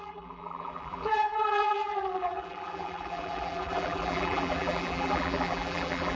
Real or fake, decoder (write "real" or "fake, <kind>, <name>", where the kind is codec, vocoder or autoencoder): fake, vocoder, BigVGAN v2